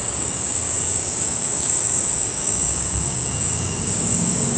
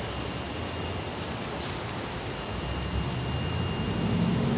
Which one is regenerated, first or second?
first